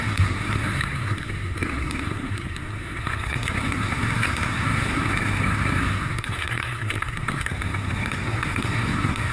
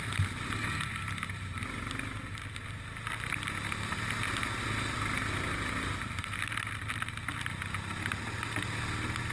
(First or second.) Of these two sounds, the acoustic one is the second